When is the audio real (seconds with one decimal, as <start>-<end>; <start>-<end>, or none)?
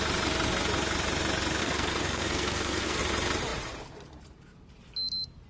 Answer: 0.0-1.6; 3.0-5.5